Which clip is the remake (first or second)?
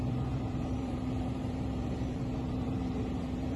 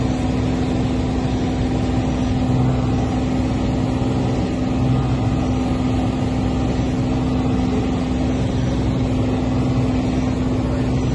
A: first